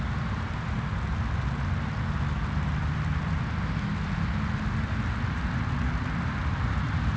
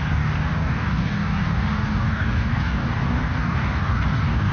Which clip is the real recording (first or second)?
first